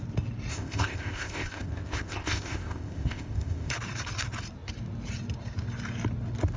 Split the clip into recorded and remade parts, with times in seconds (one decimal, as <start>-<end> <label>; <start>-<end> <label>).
0.0-0.5 recorded; 0.5-3.7 remade; 3.7-6.6 recorded